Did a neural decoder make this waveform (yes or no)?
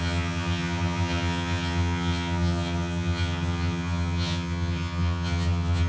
yes